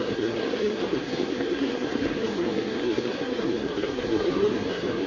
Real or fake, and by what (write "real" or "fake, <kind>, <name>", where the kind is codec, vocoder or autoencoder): fake, codec, SNAC